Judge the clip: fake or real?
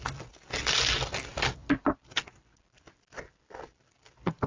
real